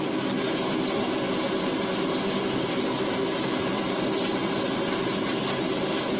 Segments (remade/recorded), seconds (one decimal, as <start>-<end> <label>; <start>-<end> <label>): 0.0-6.2 recorded